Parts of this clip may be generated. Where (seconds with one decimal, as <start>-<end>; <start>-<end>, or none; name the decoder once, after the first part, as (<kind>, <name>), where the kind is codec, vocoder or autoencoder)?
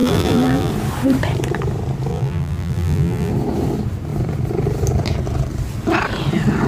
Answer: 0.0-0.7 (vocoder, BigVGAN v2); 2.1-3.3